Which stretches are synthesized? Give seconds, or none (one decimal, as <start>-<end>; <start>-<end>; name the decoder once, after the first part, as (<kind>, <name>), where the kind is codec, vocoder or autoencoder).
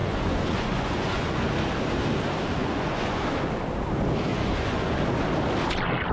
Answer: 0.0-1.4 (vocoder, Vocos); 2.6-3.2; 4.3-5.0